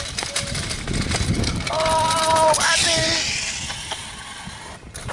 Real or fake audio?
real